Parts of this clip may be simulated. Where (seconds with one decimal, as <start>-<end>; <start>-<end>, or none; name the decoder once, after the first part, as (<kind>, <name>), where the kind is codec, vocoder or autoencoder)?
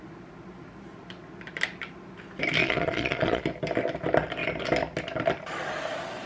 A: 2.6-3.4 (vocoder, Vocos)